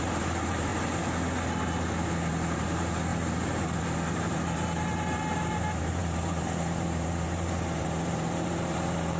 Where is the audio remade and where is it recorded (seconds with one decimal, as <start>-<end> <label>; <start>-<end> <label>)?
0.0-0.7 remade; 0.7-2.3 recorded; 2.3-9.2 remade